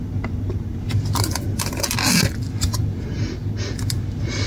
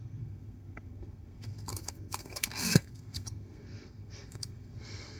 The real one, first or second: first